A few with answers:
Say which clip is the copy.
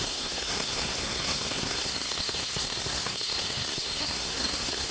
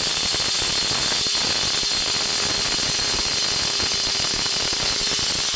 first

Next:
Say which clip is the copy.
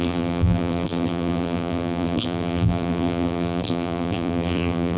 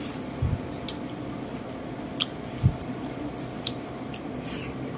first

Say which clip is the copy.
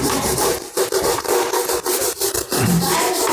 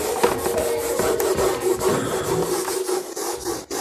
first